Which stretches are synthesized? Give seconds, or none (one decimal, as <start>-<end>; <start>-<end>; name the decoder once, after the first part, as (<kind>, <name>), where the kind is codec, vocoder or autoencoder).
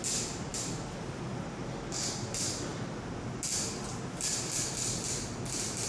none